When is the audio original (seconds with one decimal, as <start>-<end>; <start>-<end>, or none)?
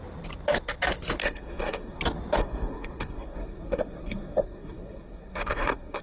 0.0-1.2; 2.0-2.4